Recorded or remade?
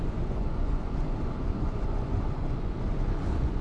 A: remade